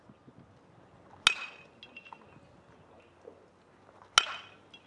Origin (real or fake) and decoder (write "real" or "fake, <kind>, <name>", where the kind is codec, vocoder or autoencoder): real